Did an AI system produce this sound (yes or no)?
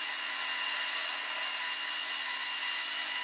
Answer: no